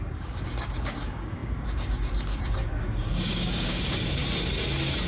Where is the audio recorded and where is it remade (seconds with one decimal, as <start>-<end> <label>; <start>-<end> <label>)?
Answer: 0.0-4.2 remade; 4.2-5.1 recorded